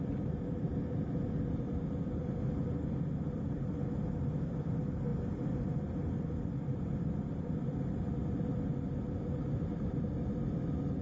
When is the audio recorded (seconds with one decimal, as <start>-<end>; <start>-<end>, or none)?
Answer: 0.0-5.1; 8.1-9.0; 9.9-11.0